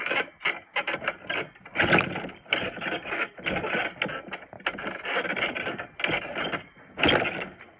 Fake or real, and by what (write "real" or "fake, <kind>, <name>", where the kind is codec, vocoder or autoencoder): real